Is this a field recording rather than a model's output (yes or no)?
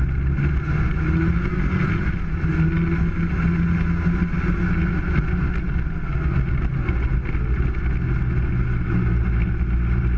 yes